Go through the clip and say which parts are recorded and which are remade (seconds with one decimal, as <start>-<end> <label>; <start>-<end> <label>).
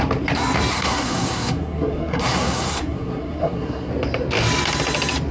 0.0-0.7 recorded; 0.7-3.9 remade; 3.9-5.3 recorded